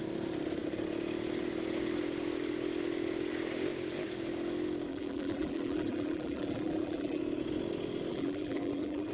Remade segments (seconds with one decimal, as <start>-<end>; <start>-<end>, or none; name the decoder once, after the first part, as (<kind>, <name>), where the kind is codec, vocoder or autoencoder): 4.9-7.2 (vocoder, BigVGAN v2); 8.1-9.1